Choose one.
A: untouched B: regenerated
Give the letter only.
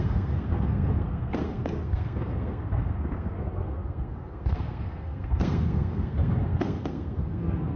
B